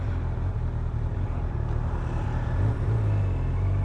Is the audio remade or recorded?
recorded